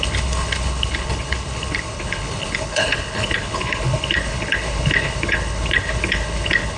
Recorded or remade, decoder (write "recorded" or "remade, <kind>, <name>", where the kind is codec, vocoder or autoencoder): remade, codec, HILCodec